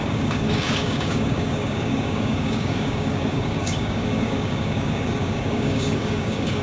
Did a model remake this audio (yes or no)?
yes